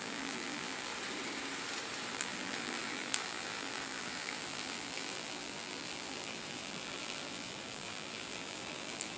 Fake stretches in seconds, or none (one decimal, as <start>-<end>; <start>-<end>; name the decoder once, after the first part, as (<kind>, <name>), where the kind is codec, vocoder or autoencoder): 0.0-0.9 (vocoder, BigVGAN v2); 2.1-9.2